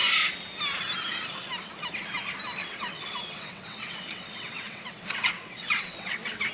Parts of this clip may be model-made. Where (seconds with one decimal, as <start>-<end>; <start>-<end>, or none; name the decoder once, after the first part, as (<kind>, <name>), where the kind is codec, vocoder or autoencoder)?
2.6-6.5 (vocoder, WaveNeXt)